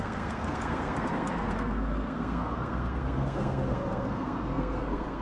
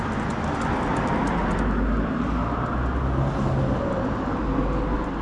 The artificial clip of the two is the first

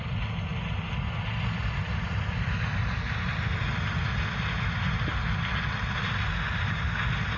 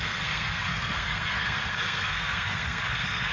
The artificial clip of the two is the second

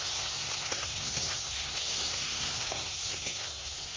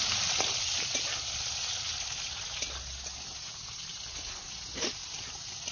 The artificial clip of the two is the first